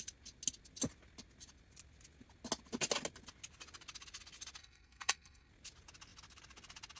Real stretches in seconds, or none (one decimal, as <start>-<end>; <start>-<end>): 0.0-4.6; 5.5-7.0